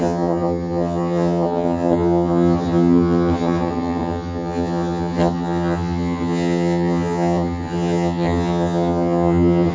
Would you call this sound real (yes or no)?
no